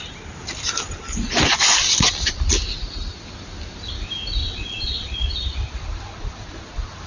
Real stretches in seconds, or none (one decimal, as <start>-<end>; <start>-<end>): 0.0-4.4; 5.1-7.1